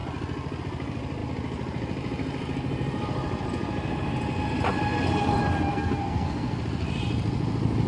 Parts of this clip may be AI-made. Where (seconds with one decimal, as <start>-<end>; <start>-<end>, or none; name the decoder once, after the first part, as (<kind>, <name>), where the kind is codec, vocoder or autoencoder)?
5.7-6.6 (codec, SNAC)